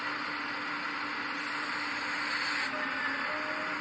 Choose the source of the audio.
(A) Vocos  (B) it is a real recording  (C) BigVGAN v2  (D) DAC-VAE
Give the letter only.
B